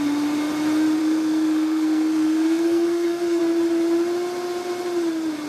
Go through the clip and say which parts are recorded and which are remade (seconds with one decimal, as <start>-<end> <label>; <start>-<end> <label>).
0.0-1.0 recorded; 1.0-3.4 remade; 3.4-5.5 recorded